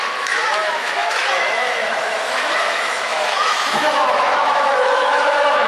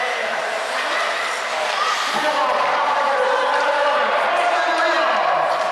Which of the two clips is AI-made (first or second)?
first